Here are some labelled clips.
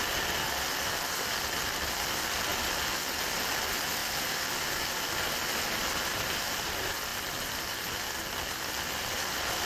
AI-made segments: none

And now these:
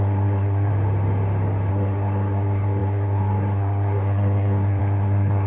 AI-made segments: 0.0-0.7 (codec, SNAC); 1.7-5.5

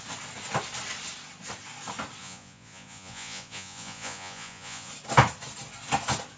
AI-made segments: 2.2-4.9 (vocoder, Vocos)

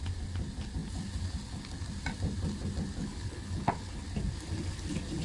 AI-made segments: 3.0-4.0 (codec, HILCodec)

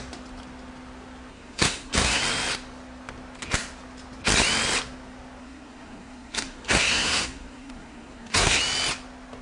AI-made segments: 1.3-2.2 (codec, SNAC); 5.4-8.6

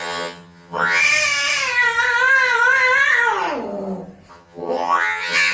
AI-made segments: 0.0-1.0 (vocoder, HiFi-GAN); 4.3-5.5